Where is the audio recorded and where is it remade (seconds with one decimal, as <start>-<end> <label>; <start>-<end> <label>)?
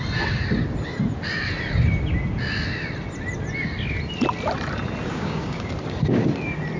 0.0-5.1 recorded; 5.1-5.7 remade; 5.7-6.8 recorded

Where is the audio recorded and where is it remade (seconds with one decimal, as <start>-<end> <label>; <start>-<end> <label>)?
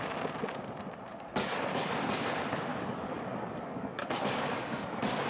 0.0-1.1 recorded; 1.1-1.9 remade; 1.9-2.7 recorded; 2.7-5.3 remade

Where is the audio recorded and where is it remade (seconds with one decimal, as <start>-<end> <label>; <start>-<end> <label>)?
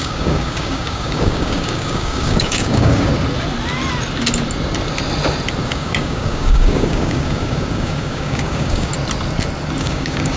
0.0-3.1 remade; 3.1-5.6 recorded; 5.6-8.9 remade; 8.9-9.8 recorded; 9.8-10.4 remade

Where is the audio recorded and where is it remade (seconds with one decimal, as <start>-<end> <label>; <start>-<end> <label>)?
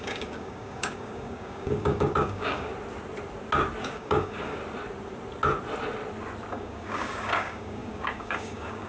0.0-2.7 remade; 2.7-3.8 recorded; 3.8-4.6 remade; 4.6-6.5 recorded; 6.5-8.9 remade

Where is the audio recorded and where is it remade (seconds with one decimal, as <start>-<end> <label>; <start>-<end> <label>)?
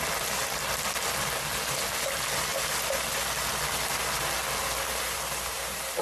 0.0-6.0 recorded